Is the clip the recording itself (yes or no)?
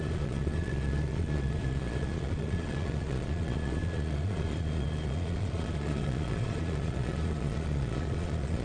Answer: no